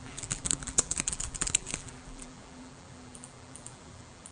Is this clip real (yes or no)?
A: no